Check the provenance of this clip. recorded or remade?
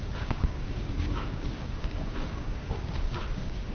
remade